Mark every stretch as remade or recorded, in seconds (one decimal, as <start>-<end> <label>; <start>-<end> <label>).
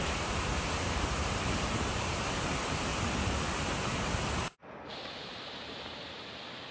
0.0-2.9 remade; 2.9-5.2 recorded; 5.2-6.7 remade